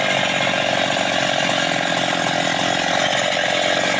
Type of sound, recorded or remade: recorded